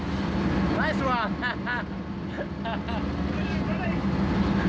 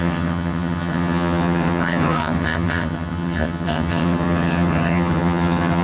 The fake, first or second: second